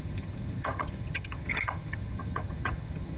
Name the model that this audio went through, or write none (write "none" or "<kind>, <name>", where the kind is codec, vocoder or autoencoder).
vocoder, HiFi-GAN